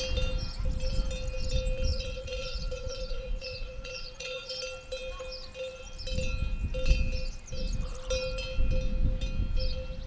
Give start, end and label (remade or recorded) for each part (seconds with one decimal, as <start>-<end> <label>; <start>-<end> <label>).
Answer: 0.0-1.9 recorded; 1.9-4.5 remade; 4.5-10.1 recorded